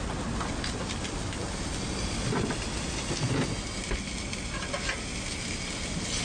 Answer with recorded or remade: recorded